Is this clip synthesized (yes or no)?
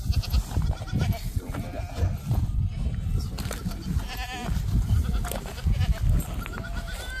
no